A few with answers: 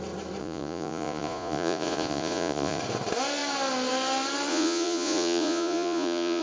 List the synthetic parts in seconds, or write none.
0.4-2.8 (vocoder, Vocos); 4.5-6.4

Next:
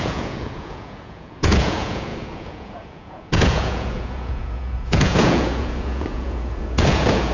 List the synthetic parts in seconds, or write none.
0.0-7.3 (vocoder, Vocos)

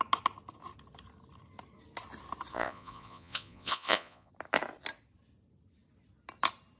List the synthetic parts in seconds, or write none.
2.5-4.3 (vocoder, Vocos)

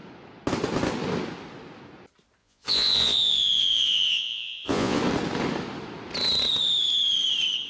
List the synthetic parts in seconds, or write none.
2.4-5.0 (vocoder, Vocos)

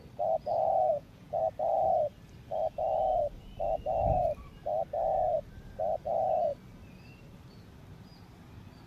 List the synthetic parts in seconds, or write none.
0.5-1.4 (vocoder, Vocos)

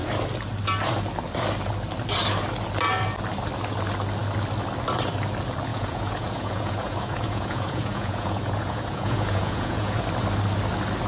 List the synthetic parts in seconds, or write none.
5.7-10.0 (vocoder, Vocos)